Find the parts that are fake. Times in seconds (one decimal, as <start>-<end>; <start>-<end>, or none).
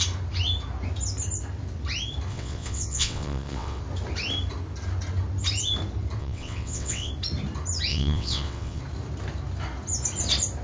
2.3-3.8; 6.2-7.1; 7.9-8.8